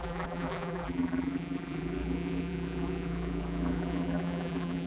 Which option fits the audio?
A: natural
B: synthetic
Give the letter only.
B